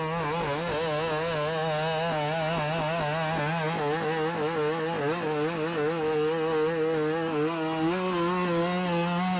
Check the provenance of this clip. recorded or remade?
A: recorded